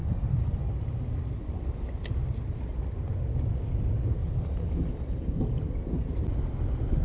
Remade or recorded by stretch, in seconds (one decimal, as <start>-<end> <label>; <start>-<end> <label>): 0.0-0.6 remade; 0.6-4.2 recorded; 4.2-5.3 remade; 5.3-7.0 recorded